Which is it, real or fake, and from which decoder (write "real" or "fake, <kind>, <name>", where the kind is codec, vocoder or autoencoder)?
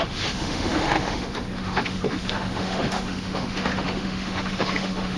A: fake, autoencoder, DAC-VAE